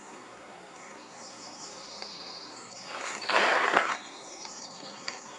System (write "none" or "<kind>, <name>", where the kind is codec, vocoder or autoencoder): codec, SNAC